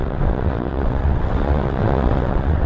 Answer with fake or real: fake